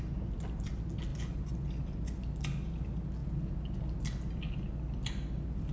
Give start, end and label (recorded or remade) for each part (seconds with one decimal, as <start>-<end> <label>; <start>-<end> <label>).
0.0-5.7 recorded